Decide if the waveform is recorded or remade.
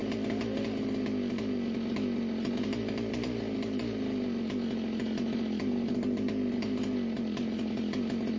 recorded